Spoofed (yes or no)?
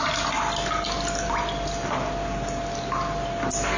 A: no